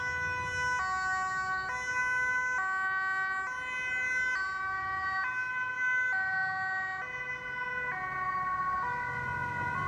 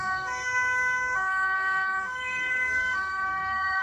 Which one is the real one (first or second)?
first